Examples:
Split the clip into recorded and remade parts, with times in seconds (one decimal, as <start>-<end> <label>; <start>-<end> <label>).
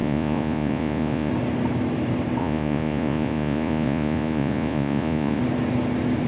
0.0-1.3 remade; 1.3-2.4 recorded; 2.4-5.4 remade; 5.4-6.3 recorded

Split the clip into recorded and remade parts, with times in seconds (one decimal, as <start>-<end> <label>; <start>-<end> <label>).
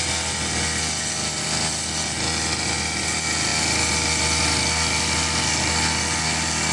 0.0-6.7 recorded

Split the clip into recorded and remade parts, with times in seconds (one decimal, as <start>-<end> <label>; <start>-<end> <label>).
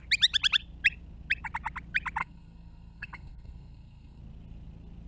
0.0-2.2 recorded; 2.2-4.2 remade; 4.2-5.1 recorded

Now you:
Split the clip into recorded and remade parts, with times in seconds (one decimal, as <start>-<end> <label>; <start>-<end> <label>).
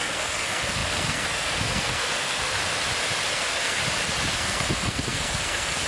0.0-2.6 remade; 2.6-3.3 recorded; 3.3-3.8 remade; 3.8-4.3 recorded; 4.3-5.9 remade